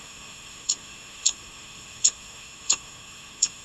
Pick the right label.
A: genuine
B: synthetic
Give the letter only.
B